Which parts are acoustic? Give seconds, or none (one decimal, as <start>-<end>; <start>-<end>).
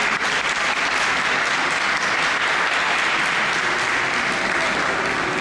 0.0-5.4